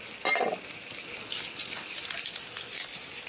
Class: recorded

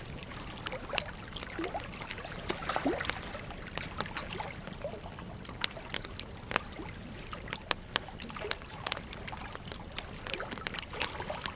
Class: recorded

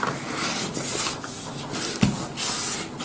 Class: recorded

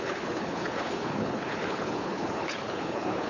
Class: remade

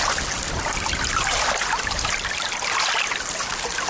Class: recorded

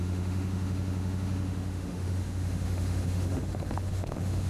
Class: remade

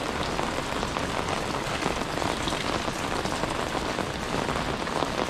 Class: recorded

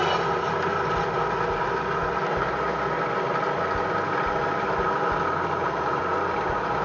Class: recorded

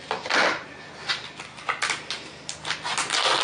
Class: recorded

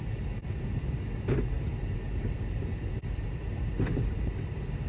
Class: recorded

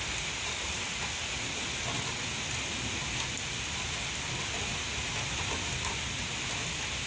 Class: recorded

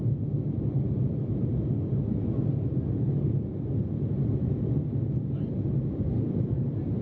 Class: recorded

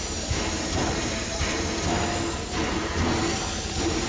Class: recorded